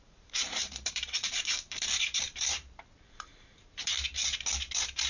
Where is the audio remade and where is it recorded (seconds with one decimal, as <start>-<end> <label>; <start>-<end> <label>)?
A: 0.0-3.9 remade; 3.9-5.1 recorded